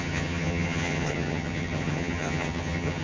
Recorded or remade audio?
remade